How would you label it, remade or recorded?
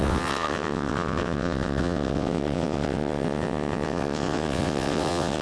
remade